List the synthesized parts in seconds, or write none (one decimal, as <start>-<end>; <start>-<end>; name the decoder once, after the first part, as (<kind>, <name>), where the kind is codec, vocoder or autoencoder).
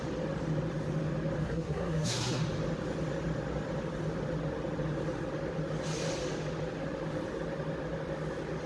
1.4-2.4 (codec, SNAC)